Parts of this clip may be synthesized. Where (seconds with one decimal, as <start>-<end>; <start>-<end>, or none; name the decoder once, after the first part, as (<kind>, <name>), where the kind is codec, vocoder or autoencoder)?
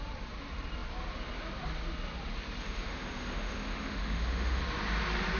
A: 2.6-4.6 (autoencoder, DAC-VAE)